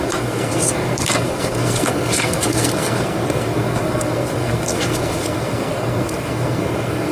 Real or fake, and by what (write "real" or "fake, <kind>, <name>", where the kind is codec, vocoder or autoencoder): fake, codec, SNAC